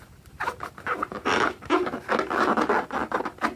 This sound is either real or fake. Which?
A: real